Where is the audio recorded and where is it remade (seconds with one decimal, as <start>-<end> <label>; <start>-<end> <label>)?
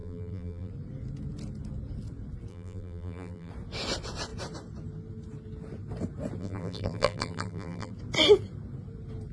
0.0-0.7 remade; 0.7-2.5 recorded; 2.5-3.5 remade; 3.5-6.4 recorded; 6.4-7.9 remade; 7.9-9.3 recorded